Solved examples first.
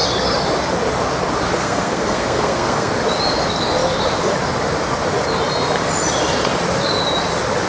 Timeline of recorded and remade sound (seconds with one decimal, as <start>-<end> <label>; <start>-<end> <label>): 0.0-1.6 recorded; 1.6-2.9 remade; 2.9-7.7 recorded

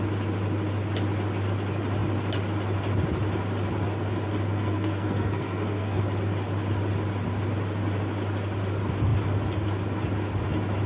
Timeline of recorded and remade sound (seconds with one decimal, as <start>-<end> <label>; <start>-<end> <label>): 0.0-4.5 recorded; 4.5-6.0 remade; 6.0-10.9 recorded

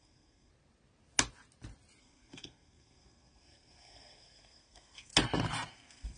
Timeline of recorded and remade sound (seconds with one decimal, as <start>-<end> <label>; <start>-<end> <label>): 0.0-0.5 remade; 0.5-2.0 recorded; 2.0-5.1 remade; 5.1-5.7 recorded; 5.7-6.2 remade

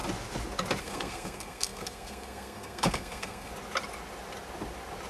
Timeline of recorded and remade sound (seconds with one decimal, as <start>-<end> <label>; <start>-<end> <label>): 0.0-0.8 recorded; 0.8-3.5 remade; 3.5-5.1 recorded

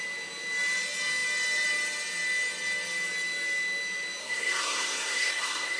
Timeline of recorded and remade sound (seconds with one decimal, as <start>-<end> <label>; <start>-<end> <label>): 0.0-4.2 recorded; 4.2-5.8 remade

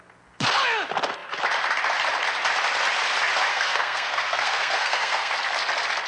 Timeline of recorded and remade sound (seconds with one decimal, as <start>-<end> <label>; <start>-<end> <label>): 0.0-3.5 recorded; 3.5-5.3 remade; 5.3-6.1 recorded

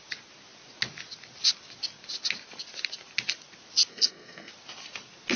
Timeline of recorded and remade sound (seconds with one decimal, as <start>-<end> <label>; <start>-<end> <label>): 0.0-3.9 recorded; 3.9-4.5 remade; 4.5-5.4 recorded